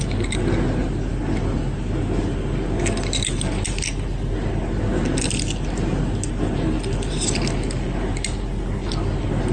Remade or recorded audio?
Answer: recorded